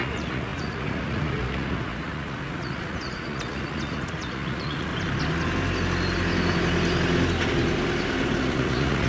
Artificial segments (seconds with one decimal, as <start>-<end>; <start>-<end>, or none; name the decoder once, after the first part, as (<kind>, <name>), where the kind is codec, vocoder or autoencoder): 0.0-4.9 (vocoder, Vocos); 8.4-9.1